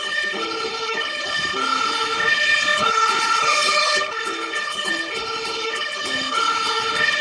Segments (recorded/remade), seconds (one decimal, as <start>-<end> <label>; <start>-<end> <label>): 0.0-7.2 remade

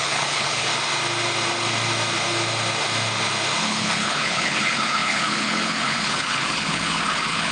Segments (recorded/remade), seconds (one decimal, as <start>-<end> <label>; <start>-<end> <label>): 0.0-0.7 remade; 0.7-3.6 recorded; 3.6-7.5 remade

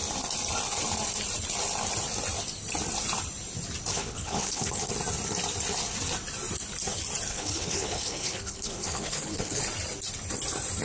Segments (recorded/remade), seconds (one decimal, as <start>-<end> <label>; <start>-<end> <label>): 0.0-3.9 recorded; 3.9-4.9 remade; 4.9-7.3 recorded; 7.3-9.6 remade; 9.6-10.8 recorded